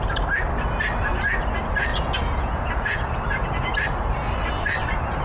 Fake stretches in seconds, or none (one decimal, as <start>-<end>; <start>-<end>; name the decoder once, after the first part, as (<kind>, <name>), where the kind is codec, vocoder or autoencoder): 1.9-3.1 (vocoder, Vocos)